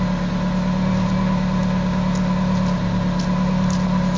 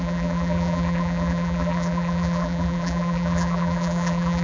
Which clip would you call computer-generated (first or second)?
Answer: second